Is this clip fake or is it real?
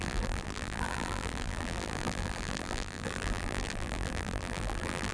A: fake